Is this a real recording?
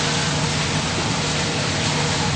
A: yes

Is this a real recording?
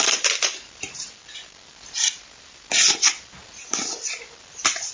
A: yes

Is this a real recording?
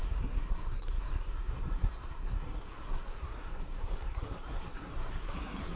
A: no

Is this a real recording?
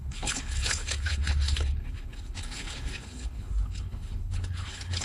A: no